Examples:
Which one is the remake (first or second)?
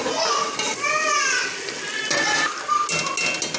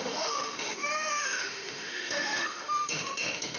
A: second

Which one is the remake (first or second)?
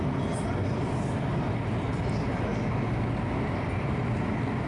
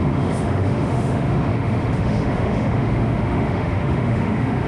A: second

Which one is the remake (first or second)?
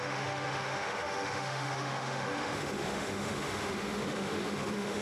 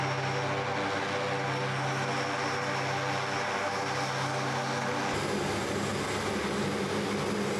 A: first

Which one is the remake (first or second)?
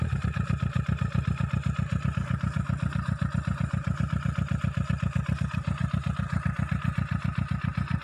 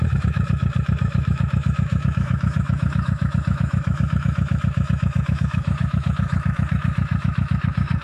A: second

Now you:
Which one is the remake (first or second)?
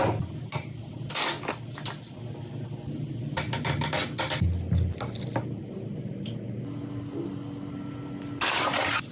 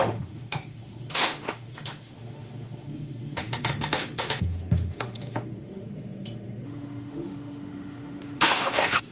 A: second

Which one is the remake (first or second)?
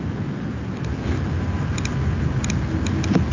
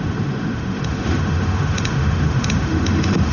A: second